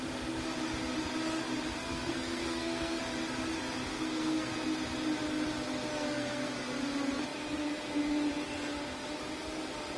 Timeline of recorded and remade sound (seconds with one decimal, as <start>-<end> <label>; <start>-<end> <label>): 0.0-1.7 recorded; 1.7-3.0 remade; 3.0-3.9 recorded; 3.9-4.5 remade; 4.5-5.9 recorded; 5.9-6.5 remade; 6.5-10.0 recorded